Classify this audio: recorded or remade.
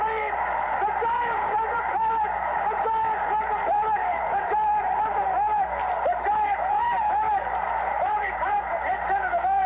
remade